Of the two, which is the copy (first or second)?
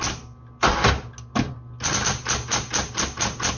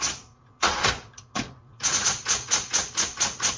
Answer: second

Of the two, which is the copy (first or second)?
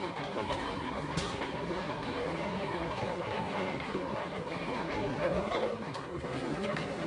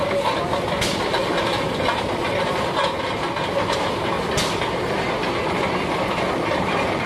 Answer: first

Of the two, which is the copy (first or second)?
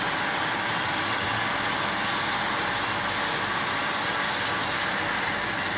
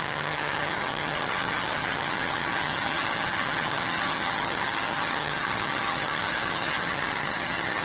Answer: second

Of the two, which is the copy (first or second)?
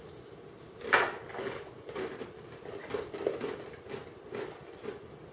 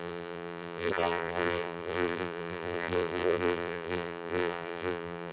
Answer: second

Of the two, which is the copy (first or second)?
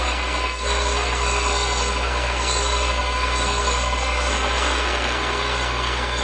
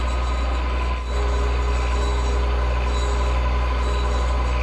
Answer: first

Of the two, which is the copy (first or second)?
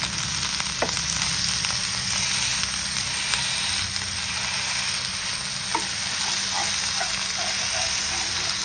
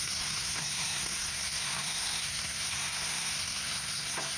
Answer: second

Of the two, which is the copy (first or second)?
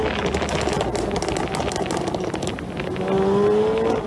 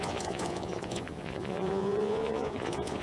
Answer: second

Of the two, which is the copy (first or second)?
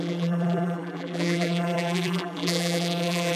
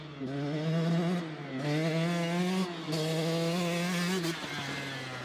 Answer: first